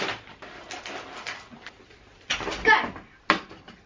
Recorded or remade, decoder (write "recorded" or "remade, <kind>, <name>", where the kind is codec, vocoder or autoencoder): recorded